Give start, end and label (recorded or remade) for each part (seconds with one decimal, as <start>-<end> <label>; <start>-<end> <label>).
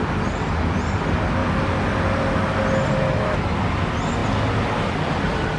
0.0-5.6 recorded